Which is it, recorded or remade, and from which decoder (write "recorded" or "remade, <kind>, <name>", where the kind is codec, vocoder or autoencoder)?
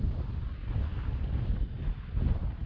recorded